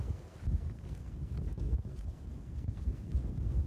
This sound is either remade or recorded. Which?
remade